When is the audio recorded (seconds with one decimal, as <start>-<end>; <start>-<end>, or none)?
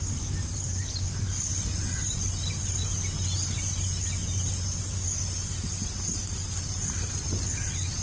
0.0-8.0